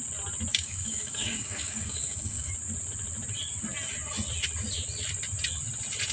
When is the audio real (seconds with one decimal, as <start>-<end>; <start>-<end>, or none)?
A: 0.0-0.5; 2.5-6.1

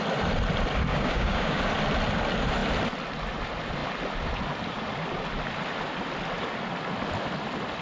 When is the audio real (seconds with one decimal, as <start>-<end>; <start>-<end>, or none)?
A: 0.0-0.9; 1.6-7.8

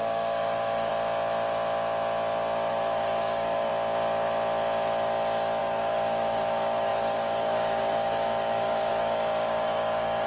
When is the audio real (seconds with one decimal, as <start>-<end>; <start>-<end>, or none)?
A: 0.9-2.7; 3.7-5.6

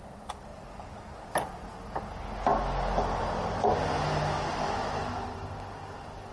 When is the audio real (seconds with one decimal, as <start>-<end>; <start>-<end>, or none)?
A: 0.0-6.3

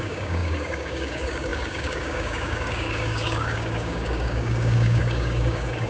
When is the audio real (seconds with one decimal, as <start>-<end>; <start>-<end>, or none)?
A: none

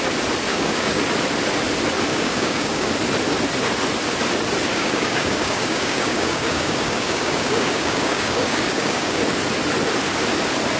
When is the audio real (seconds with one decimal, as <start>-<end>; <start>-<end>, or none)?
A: 0.0-0.5; 1.0-2.1; 2.9-4.7; 9.2-10.8

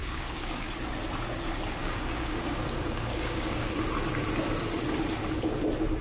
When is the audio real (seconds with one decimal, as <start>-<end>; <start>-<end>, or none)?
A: 0.7-1.8; 3.7-6.0